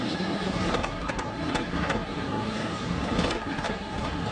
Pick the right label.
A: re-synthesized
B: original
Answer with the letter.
A